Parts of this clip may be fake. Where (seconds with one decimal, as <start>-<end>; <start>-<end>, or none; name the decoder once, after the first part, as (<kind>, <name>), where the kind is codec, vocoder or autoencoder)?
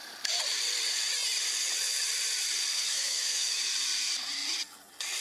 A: 2.7-3.6 (autoencoder, DAC-VAE)